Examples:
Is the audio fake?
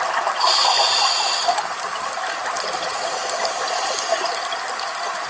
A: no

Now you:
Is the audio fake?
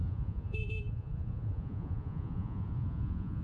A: yes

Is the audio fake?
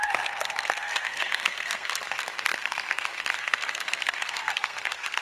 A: yes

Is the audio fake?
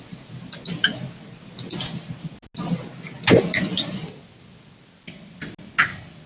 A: no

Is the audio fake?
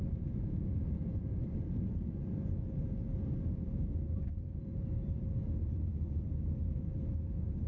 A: yes